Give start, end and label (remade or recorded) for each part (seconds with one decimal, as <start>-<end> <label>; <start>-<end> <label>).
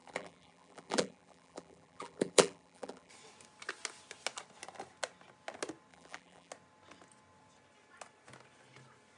0.0-3.1 remade; 3.1-5.9 recorded; 5.9-6.5 remade; 6.5-9.2 recorded